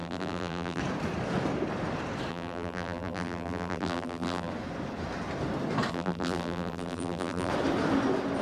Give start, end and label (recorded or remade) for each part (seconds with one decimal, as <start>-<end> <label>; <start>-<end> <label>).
0.0-0.8 remade; 0.8-2.3 recorded; 2.3-4.5 remade; 4.5-5.9 recorded; 5.9-7.5 remade; 7.5-8.4 recorded